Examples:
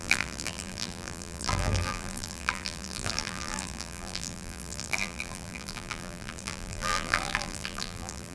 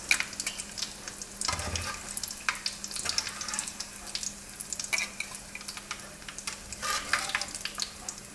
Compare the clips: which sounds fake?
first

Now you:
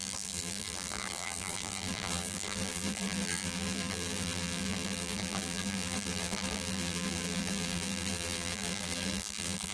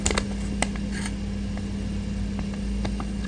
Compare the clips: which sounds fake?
first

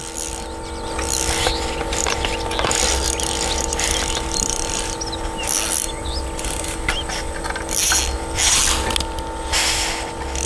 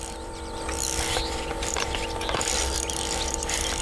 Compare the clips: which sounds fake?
second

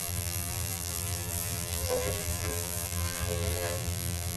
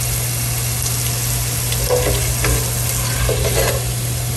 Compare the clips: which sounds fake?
first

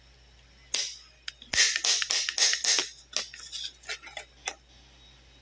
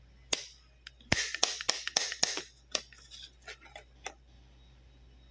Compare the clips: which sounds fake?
second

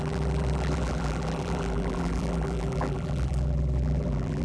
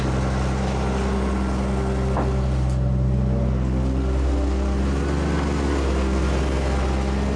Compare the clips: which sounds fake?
first